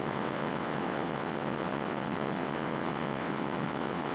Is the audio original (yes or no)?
no